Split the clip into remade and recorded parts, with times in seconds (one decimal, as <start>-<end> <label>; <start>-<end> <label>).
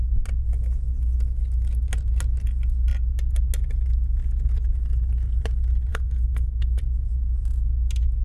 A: 0.0-5.9 recorded; 5.9-6.8 remade; 6.8-8.2 recorded